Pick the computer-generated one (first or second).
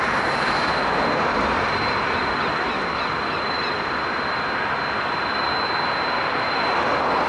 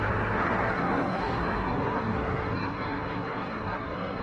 second